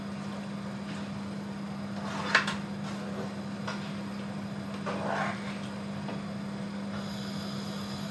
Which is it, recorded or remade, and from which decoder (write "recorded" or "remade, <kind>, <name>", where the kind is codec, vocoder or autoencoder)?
recorded